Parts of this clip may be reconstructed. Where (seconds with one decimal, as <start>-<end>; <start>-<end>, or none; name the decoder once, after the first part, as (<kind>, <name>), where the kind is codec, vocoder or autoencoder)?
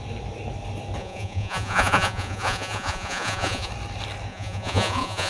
1.0-3.7 (vocoder, Vocos); 4.3-5.3